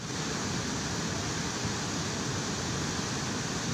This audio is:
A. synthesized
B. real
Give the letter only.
B